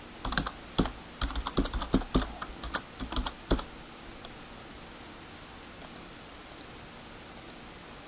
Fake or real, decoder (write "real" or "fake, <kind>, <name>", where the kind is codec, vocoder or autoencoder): real